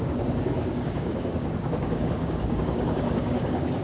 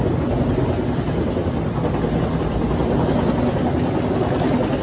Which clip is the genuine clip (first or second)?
second